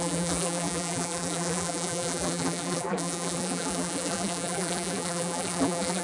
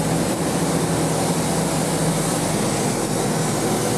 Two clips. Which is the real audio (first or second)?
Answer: second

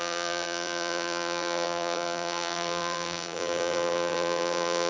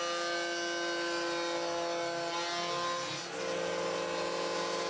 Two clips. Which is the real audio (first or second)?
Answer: second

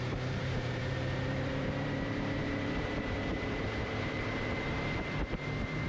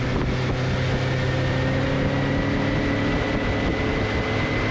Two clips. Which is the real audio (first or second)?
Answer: second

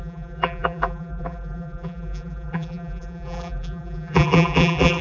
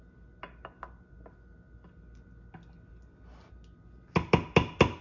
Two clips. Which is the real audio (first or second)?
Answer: second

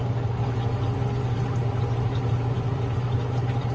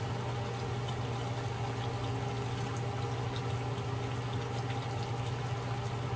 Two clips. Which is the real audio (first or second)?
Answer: second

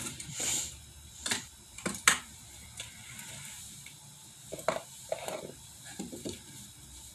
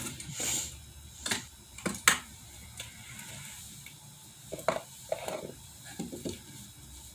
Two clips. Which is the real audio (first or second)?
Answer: second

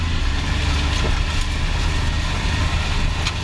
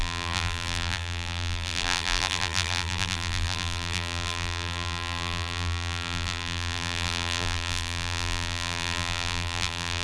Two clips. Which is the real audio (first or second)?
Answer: first